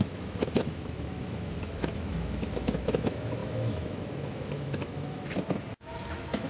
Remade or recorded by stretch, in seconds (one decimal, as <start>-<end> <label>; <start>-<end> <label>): 0.0-6.5 remade